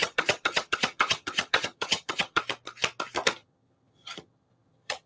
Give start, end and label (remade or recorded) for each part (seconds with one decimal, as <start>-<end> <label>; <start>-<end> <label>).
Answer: 0.0-2.4 remade; 2.4-3.4 recorded; 3.4-5.1 remade

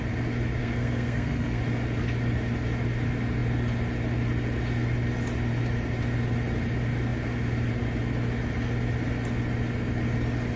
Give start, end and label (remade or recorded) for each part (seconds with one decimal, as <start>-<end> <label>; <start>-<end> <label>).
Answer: 0.0-0.6 recorded; 0.6-1.6 remade; 1.6-10.6 recorded

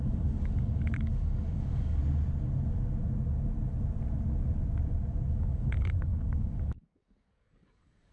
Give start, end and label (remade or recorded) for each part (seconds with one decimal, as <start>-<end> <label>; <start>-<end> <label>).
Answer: 0.0-2.0 remade; 2.0-5.3 recorded; 5.3-8.1 remade

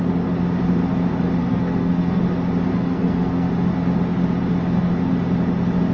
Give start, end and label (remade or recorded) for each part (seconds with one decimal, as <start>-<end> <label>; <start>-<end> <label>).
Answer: 0.0-1.4 recorded; 1.4-2.2 remade; 2.2-2.7 recorded; 2.7-3.5 remade; 3.5-5.9 recorded

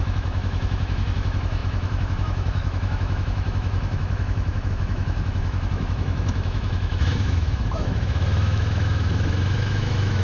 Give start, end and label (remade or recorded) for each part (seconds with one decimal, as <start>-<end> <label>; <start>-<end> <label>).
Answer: 0.0-10.2 remade

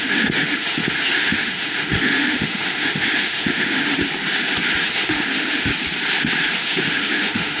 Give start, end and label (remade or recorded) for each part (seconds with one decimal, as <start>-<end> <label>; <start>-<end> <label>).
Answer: 0.0-4.0 remade; 4.0-4.8 recorded; 4.8-5.7 remade; 5.7-6.6 recorded; 6.6-7.6 remade